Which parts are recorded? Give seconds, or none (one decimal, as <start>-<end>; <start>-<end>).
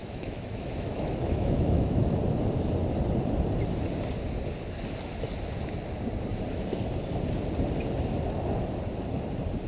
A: 2.2-9.7